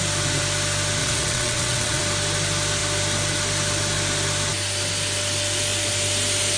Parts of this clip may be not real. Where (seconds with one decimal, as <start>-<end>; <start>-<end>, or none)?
1.0-2.0

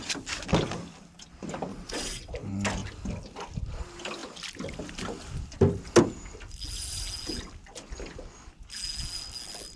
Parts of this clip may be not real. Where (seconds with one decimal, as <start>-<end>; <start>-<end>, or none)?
1.7-2.3

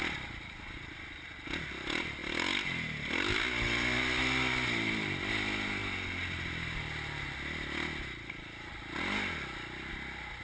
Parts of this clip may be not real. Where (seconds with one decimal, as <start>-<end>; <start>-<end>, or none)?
none